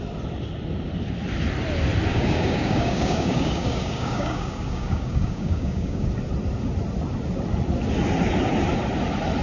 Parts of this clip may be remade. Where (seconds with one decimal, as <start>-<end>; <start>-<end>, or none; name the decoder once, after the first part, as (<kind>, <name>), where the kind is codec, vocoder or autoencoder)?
2.1-6.1 (codec, DAC)